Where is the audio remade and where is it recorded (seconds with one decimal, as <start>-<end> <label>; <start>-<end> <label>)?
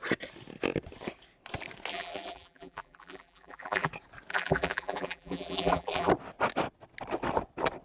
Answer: 0.0-1.9 recorded; 1.9-3.9 remade; 3.9-4.3 recorded; 4.3-6.1 remade; 6.1-7.8 recorded